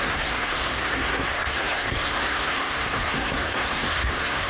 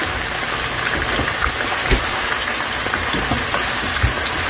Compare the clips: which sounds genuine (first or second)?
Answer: second